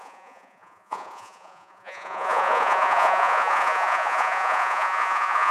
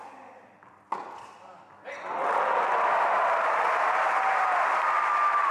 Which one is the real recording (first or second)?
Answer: second